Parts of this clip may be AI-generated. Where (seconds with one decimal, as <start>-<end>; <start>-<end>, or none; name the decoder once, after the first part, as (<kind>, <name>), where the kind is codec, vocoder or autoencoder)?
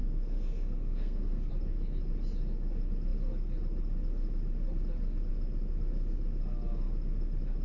0.0-1.5 (codec, SNAC)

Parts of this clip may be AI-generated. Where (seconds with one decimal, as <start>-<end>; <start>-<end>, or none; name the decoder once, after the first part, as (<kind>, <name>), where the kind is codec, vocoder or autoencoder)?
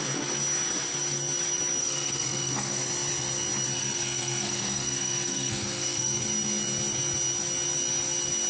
1.8-2.8 (codec, SNAC); 3.8-6.2